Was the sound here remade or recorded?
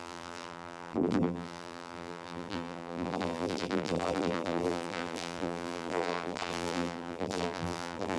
remade